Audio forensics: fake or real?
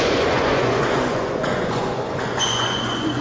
fake